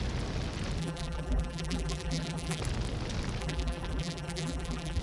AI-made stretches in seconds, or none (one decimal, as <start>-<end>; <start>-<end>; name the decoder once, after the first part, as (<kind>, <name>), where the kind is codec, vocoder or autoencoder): 0.8-2.6 (vocoder, BigVGAN v2); 3.4-5.0